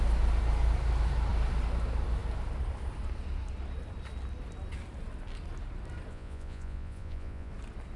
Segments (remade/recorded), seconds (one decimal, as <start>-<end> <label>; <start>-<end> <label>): 0.0-6.1 recorded; 6.1-7.5 remade; 7.5-8.0 recorded